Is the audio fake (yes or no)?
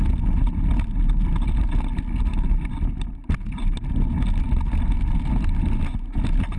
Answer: no